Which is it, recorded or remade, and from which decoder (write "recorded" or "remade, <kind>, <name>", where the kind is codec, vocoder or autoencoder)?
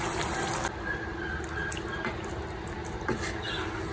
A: recorded